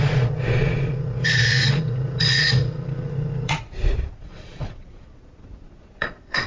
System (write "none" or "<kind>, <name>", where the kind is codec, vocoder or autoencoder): vocoder, Vocos